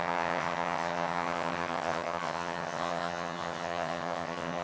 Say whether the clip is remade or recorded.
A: remade